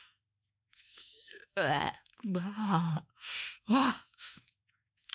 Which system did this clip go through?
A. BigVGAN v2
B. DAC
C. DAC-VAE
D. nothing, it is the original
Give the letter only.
C